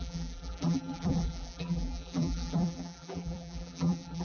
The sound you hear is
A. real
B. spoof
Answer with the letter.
B